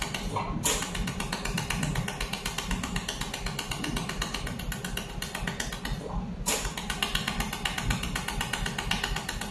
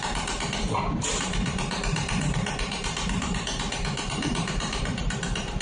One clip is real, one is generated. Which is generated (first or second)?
second